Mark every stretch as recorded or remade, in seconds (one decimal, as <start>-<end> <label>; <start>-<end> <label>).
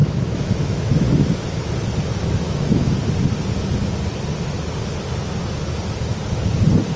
0.0-1.3 remade; 1.3-2.1 recorded; 2.1-2.9 remade; 2.9-7.0 recorded